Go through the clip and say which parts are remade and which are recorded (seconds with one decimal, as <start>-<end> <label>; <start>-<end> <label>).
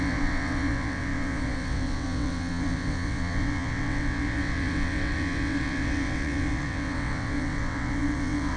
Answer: 0.0-8.6 remade